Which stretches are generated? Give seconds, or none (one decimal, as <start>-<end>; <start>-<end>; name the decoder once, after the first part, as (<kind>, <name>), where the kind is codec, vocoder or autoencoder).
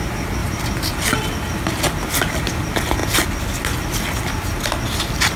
0.4-0.9 (vocoder, BigVGAN v2)